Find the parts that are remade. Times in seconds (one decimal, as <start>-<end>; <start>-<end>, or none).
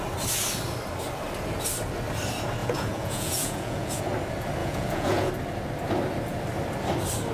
2.6-4.0; 4.6-5.3